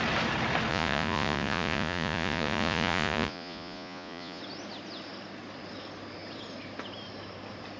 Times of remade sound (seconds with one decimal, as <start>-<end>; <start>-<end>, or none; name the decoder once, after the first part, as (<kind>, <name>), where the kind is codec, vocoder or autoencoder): 0.7-4.4 (vocoder, Vocos)